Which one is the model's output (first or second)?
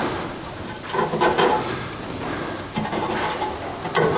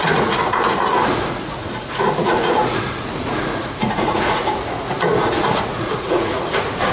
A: second